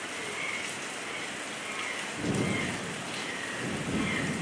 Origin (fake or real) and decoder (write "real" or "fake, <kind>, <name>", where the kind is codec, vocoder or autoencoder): real